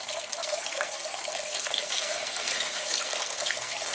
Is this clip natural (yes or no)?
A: no